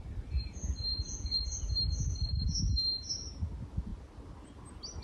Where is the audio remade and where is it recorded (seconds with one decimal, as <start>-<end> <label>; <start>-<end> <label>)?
0.0-0.9 recorded; 0.9-1.4 remade; 1.4-5.0 recorded